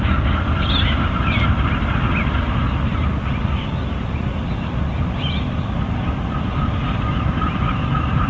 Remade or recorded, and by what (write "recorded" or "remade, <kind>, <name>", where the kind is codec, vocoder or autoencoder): recorded